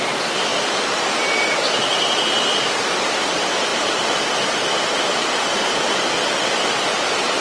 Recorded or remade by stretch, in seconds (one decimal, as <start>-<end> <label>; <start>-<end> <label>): 0.0-7.4 recorded